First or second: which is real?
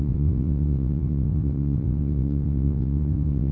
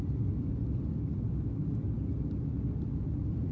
second